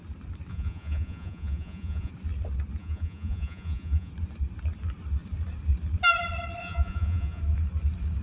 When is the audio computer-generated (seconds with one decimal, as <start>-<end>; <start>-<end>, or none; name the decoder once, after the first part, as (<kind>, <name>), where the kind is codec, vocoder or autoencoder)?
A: 0.5-2.1 (vocoder, Vocos); 2.8-4.1; 6.6-7.4